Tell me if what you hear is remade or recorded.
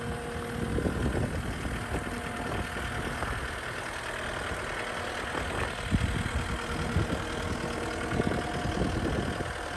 recorded